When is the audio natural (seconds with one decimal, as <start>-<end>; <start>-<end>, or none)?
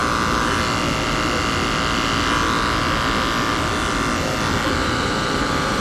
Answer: 0.0-4.8